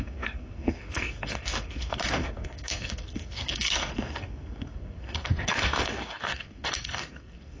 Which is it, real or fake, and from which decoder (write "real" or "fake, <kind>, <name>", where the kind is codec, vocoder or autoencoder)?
fake, codec, SNAC